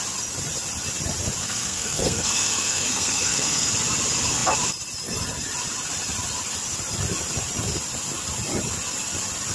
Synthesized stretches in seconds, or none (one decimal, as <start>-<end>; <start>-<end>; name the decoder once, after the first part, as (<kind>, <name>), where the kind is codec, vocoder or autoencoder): 1.4-3.7 (codec, SNAC)